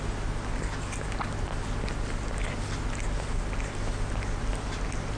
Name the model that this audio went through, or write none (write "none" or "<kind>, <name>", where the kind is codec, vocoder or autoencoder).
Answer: none